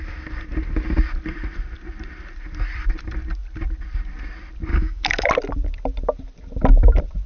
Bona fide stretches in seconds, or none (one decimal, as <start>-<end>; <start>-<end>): 0.0-4.7; 5.3-7.3